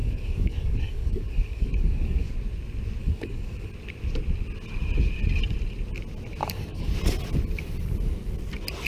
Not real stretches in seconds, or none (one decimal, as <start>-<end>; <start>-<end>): 0.0-2.3; 3.0-3.7; 6.4-6.9